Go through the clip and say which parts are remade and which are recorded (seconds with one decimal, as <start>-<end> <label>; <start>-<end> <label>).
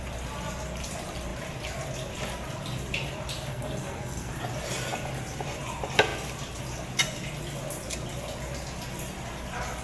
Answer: 0.0-3.5 recorded; 3.5-4.3 remade; 4.3-9.8 recorded